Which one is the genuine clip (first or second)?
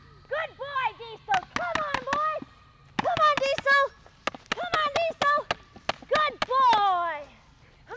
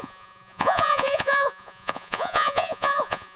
first